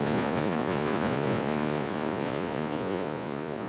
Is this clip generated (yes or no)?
yes